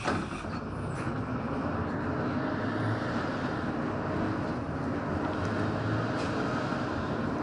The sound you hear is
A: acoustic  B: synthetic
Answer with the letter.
A